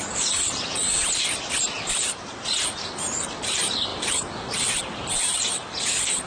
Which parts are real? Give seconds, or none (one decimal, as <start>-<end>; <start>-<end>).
none